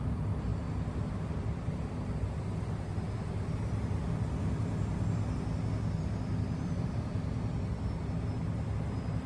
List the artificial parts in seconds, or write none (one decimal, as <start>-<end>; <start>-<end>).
none